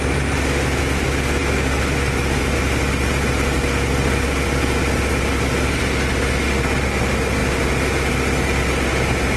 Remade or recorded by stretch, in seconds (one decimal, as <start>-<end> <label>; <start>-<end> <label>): 0.0-9.4 recorded